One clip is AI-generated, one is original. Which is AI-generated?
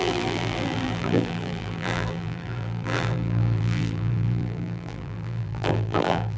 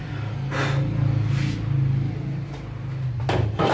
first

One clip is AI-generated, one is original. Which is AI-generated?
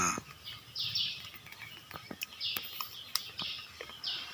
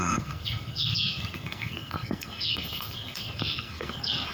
second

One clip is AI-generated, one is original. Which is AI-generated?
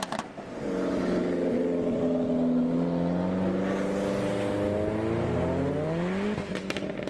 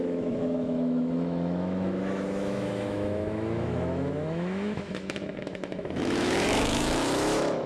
second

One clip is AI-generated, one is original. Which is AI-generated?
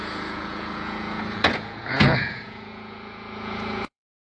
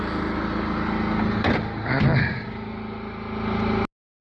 first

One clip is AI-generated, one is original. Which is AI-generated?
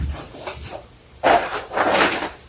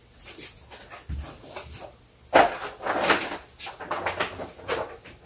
first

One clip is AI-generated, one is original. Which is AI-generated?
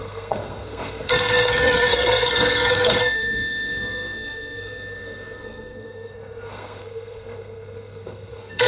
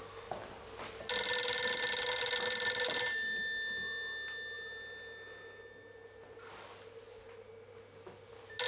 first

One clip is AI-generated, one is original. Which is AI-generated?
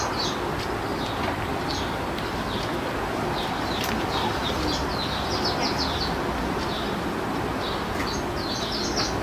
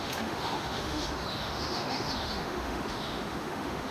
second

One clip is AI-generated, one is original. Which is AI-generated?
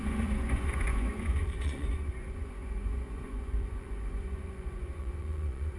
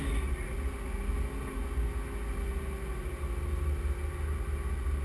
first